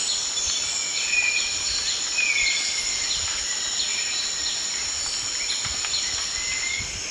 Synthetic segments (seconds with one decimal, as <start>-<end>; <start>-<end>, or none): 3.9-4.4